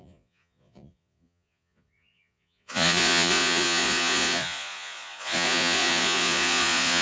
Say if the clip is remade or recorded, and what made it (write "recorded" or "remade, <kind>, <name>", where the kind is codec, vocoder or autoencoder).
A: remade, vocoder, Vocos